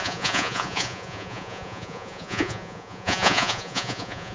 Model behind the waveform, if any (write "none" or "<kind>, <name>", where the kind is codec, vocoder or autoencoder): vocoder, Vocos